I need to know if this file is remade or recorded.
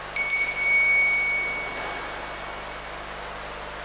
recorded